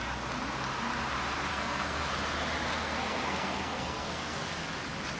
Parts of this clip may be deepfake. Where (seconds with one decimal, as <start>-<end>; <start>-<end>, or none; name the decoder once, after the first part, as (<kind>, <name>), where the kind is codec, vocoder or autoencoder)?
1.5-2.1 (codec, SNAC); 2.7-4.5